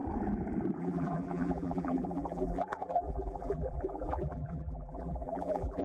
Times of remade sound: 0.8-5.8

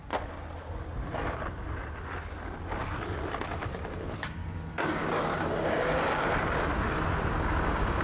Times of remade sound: 4.2-6.3; 7.4-8.0